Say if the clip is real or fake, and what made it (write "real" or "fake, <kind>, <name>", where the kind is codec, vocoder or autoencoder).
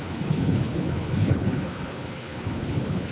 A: fake, codec, HILCodec